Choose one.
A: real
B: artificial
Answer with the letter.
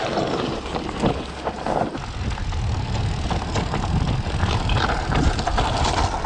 A